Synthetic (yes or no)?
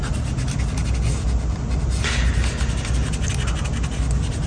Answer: no